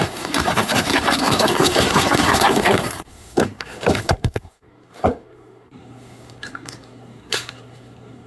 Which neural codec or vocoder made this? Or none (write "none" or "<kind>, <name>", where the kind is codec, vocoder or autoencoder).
codec, SNAC